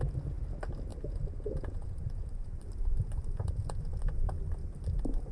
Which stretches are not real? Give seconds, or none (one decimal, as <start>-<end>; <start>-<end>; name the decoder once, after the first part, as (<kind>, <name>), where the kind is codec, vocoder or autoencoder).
0.9-2.6 (vocoder, Vocos); 3.2-3.8